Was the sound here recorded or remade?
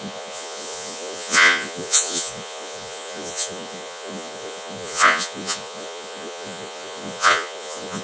remade